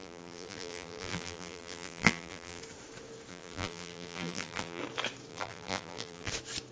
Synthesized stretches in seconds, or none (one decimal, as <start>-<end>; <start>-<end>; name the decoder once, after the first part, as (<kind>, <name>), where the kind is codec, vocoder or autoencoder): 0.0-2.6 (vocoder, BigVGAN v2); 3.3-4.8; 5.3-6.3